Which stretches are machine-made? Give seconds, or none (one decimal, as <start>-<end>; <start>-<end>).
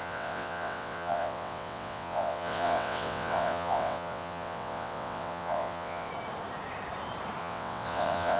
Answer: 0.0-6.1; 7.4-8.4